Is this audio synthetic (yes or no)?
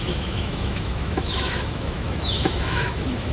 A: yes